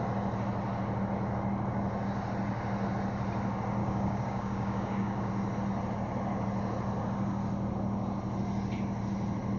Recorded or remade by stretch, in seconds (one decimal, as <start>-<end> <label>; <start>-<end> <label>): 0.0-3.8 recorded; 3.8-5.3 remade; 5.3-9.6 recorded